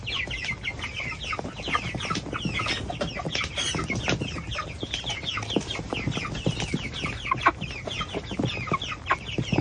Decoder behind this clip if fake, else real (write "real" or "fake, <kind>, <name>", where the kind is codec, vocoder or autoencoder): real